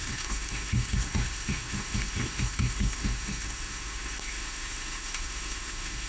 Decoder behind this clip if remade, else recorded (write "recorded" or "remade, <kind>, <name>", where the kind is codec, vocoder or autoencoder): remade, autoencoder, DAC-VAE